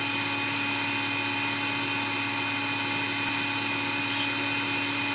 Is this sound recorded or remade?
recorded